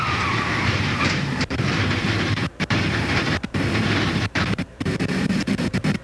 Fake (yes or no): yes